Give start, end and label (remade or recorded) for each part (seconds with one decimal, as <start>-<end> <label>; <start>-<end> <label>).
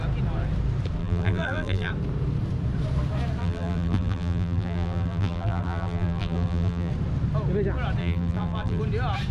0.0-1.0 recorded; 1.0-1.9 remade; 1.9-3.4 recorded; 3.4-6.9 remade; 6.9-8.0 recorded; 8.0-8.8 remade; 8.8-9.3 recorded